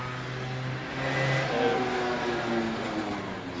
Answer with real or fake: real